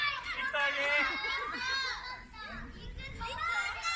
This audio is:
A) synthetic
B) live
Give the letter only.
B